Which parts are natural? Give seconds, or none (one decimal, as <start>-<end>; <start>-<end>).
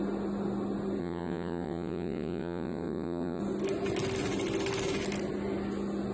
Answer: 0.0-1.0; 3.4-6.1